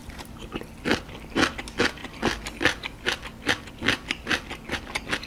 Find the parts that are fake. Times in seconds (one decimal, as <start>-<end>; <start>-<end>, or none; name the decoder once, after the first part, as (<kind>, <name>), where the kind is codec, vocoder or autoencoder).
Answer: 0.0-0.6 (vocoder, BigVGAN v2)